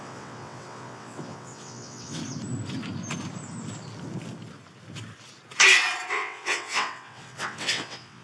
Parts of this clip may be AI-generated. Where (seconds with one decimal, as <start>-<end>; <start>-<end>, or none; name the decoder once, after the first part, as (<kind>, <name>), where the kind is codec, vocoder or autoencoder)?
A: 0.0-2.2 (vocoder, WaveNeXt); 6.1-8.2